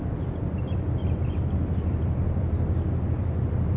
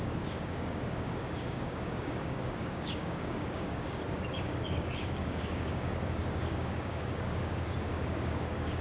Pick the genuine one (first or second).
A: first